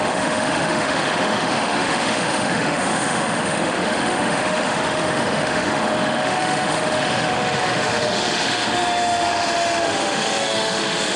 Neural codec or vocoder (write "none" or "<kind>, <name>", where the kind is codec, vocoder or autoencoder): autoencoder, DAC-VAE